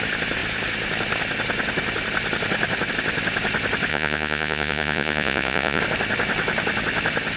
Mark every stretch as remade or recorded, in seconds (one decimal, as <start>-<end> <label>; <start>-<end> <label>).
0.0-3.9 recorded; 3.9-5.8 remade; 5.8-7.4 recorded